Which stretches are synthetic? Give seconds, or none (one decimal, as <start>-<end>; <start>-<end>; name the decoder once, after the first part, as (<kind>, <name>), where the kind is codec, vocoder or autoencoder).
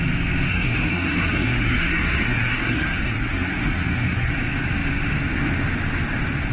0.5-4.3 (codec, SNAC)